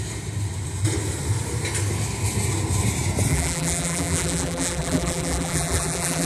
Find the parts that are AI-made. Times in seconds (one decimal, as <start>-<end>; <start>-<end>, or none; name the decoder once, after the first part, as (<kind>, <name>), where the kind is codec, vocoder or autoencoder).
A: 3.3-6.3 (vocoder, BigVGAN v2)